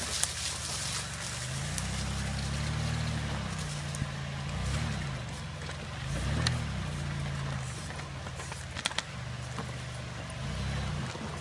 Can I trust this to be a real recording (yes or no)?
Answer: yes